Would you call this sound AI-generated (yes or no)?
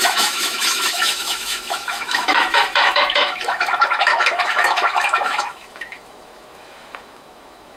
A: yes